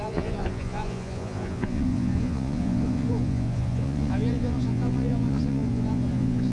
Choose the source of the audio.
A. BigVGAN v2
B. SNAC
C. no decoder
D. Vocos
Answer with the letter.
D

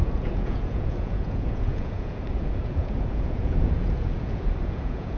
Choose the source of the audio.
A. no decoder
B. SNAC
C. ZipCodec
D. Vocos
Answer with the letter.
D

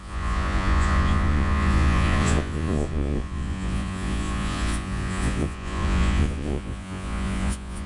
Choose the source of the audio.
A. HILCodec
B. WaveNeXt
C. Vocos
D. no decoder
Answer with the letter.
C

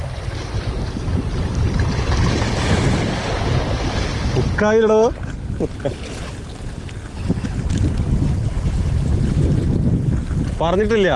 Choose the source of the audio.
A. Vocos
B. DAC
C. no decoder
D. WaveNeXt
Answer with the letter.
C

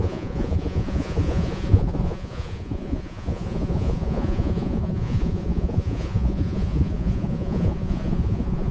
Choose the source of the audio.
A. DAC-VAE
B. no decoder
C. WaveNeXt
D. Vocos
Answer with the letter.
D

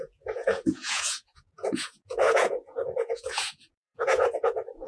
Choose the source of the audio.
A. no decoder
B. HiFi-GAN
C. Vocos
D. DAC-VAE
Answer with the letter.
C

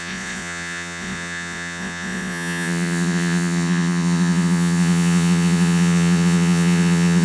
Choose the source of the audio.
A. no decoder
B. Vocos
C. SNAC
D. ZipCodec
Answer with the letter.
B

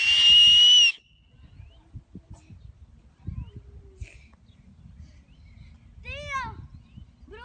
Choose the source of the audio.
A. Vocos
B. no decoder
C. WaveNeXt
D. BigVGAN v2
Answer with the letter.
B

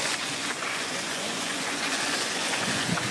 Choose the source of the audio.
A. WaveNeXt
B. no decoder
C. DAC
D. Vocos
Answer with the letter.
D